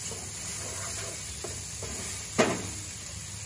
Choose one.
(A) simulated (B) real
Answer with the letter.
B